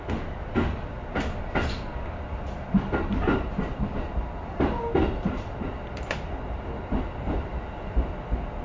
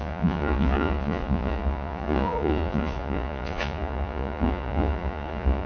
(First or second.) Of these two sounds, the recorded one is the first